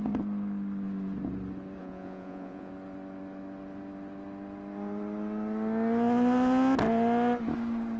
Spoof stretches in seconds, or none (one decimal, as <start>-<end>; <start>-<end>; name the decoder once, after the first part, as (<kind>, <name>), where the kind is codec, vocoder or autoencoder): 1.8-2.7 (vocoder, Vocos)